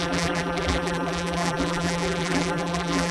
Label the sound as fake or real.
fake